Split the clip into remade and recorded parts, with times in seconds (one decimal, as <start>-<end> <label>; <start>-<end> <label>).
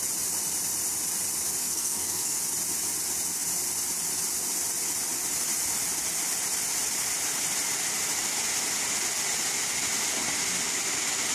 0.0-1.6 recorded; 1.6-2.4 remade; 2.4-11.3 recorded